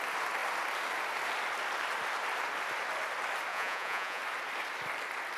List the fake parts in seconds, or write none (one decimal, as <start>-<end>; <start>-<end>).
3.5-4.2